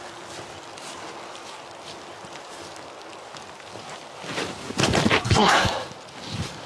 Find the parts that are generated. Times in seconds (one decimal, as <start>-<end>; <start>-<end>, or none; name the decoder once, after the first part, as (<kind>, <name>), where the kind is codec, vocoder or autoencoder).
5.2-5.7 (codec, SNAC)